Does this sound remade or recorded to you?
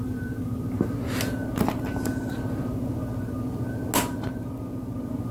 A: recorded